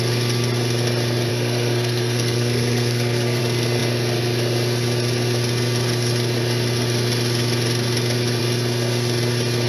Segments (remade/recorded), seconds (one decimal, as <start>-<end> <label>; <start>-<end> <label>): 0.0-1.3 recorded; 1.3-3.4 remade; 3.4-9.7 recorded